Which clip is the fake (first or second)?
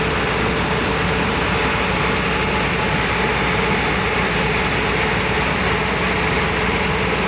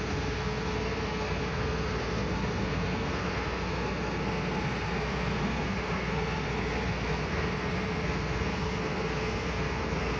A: second